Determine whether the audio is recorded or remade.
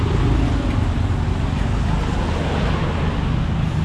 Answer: recorded